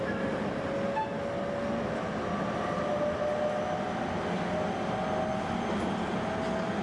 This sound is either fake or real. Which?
real